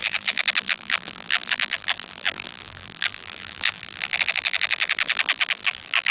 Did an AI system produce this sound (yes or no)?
yes